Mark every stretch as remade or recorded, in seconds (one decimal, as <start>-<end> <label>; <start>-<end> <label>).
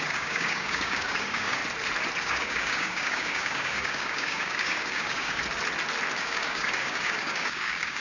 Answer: 0.0-1.6 remade; 1.6-2.2 recorded; 2.2-5.4 remade; 5.4-6.2 recorded; 6.2-8.0 remade